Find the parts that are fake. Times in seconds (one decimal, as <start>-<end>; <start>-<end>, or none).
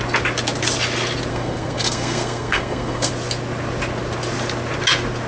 1.3-3.1